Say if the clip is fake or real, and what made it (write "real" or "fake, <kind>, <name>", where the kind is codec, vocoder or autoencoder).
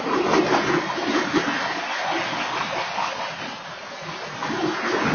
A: real